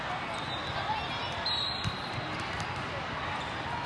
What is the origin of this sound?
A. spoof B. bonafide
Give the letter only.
B